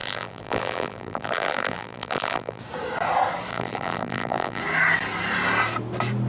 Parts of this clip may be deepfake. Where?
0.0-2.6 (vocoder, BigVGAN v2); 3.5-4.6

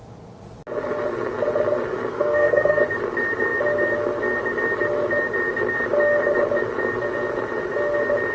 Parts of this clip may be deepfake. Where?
2.1-2.8 (codec, SNAC)

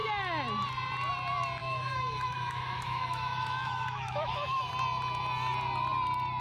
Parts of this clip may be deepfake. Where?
1.6-4.7 (autoencoder, DAC-VAE)

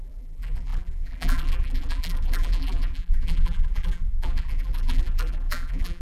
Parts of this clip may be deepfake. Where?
0.0-6.0 (vocoder, BigVGAN v2)